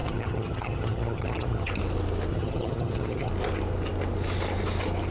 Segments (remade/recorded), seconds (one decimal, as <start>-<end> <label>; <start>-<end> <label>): 0.0-1.7 remade; 1.7-2.3 recorded; 2.3-3.3 remade; 3.3-5.1 recorded